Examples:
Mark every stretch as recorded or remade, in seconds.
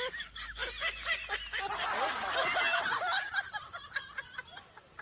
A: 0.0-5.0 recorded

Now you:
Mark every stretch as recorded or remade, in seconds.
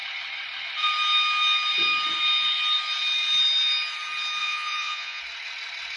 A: 0.0-4.4 recorded; 4.4-5.2 remade; 5.2-6.0 recorded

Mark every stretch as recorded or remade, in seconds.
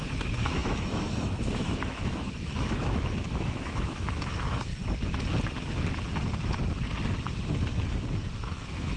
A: 0.0-4.7 remade; 4.7-8.3 recorded; 8.3-9.0 remade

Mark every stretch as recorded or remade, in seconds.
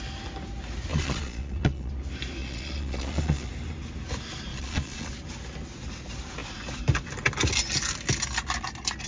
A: 0.0-0.9 recorded; 0.9-1.9 remade; 1.9-2.4 recorded; 2.4-3.5 remade; 3.5-4.5 recorded; 4.5-5.1 remade; 5.1-9.1 recorded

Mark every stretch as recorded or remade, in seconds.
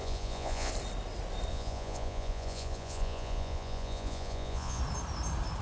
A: 0.0-0.7 remade; 0.7-1.5 recorded; 1.5-4.8 remade; 4.8-5.6 recorded